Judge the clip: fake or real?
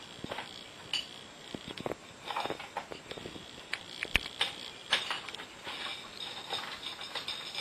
real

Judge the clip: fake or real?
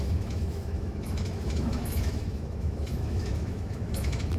fake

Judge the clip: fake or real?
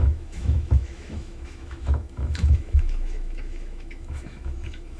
fake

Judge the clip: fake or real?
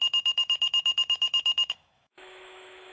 fake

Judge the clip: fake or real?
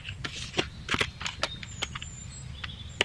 real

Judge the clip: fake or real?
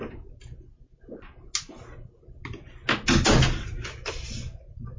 real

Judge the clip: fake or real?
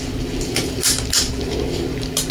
real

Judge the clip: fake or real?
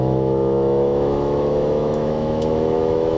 fake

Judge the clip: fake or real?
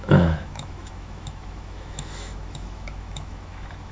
fake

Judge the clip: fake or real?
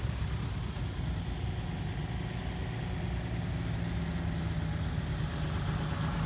real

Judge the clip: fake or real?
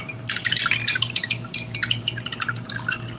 real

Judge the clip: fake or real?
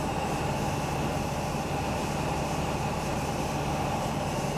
real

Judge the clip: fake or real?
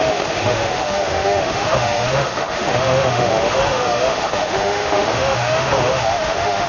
fake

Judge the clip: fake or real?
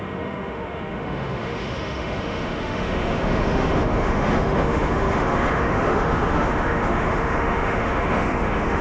fake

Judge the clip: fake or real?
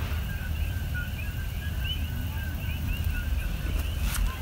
real